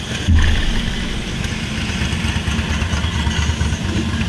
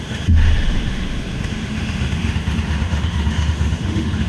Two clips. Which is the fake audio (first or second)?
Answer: second